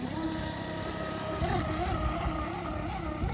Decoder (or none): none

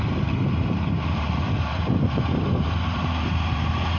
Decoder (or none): vocoder, BigVGAN v2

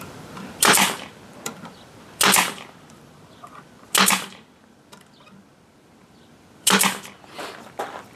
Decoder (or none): vocoder, BigVGAN v2